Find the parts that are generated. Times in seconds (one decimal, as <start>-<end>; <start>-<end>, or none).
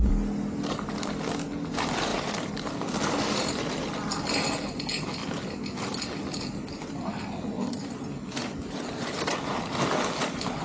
none